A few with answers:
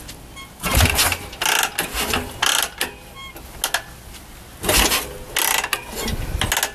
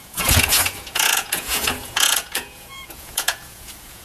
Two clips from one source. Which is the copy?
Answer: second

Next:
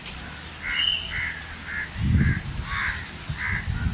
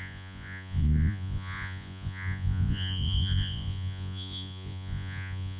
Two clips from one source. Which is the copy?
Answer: second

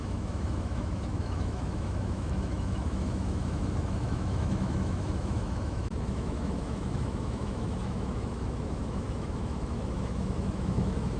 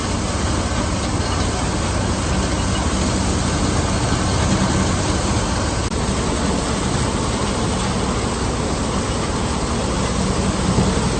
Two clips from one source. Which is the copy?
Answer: first